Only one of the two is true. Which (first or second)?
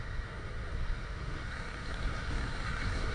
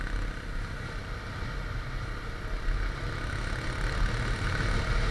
second